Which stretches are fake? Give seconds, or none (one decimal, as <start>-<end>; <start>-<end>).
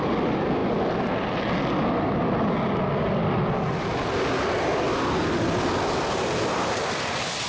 none